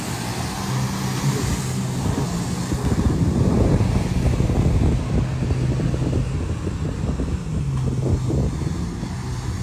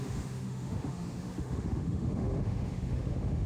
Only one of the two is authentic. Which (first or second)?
first